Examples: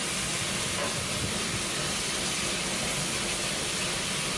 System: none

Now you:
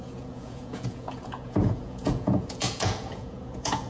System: vocoder, Vocos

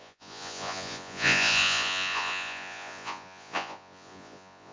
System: vocoder, Vocos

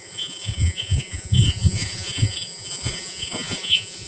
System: vocoder, Vocos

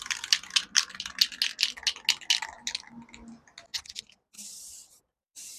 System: none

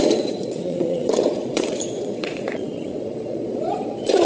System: vocoder, Vocos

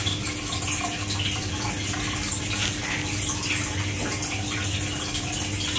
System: none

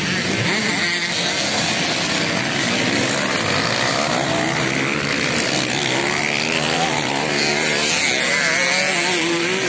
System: none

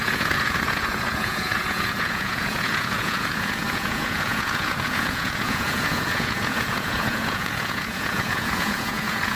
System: vocoder, Vocos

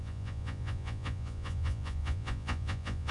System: vocoder, Vocos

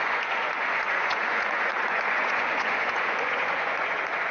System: vocoder, Vocos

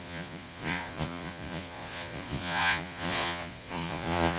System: vocoder, Vocos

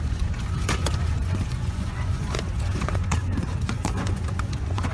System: vocoder, Vocos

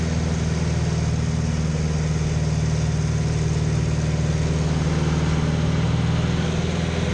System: none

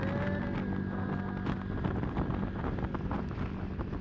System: none